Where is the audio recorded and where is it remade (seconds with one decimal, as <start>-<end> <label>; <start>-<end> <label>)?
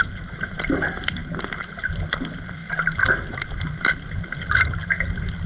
0.0-5.5 recorded